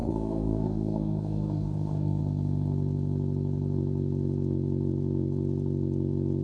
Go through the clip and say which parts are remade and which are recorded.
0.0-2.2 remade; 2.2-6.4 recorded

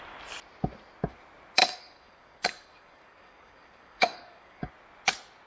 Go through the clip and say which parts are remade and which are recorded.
0.0-1.6 recorded; 1.6-4.7 remade; 4.7-5.5 recorded